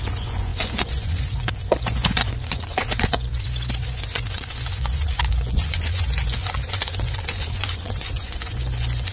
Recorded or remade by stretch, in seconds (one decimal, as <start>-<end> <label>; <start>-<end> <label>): 0.0-3.3 remade; 3.3-3.8 recorded; 3.8-9.1 remade